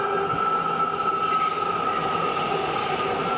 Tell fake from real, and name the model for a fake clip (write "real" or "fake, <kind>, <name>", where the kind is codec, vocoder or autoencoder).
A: real